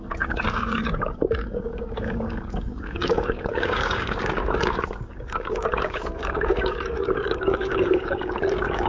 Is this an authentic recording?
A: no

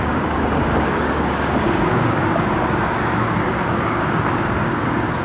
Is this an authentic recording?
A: no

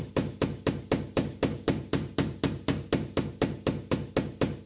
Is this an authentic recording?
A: yes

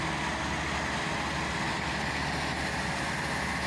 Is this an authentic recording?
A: yes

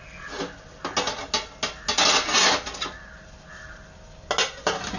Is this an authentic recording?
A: yes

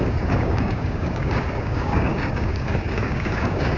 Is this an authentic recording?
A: no